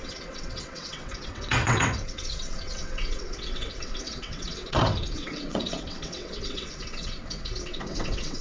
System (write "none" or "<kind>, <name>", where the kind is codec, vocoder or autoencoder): vocoder, WaveNeXt